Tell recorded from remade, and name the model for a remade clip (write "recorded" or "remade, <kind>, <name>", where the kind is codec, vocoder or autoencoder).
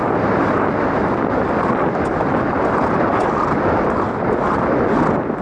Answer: recorded